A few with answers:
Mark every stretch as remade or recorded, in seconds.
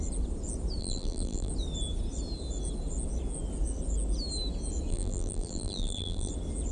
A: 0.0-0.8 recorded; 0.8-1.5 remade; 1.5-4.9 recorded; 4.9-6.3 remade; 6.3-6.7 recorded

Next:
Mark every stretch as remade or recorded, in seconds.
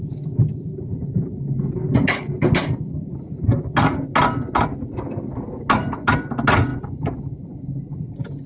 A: 0.0-8.5 recorded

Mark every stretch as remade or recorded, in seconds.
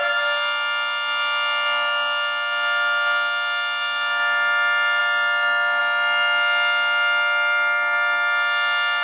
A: 0.0-9.0 recorded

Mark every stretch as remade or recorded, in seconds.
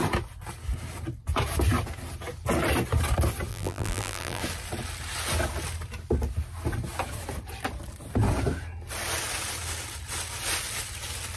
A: 0.0-3.5 recorded; 3.5-4.4 remade; 4.4-11.4 recorded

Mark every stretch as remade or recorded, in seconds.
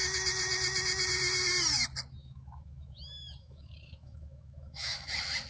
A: 0.0-2.2 recorded; 2.2-5.1 remade; 5.1-5.5 recorded